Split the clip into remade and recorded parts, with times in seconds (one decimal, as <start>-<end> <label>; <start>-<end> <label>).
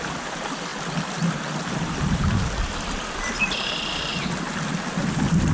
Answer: 0.0-5.5 recorded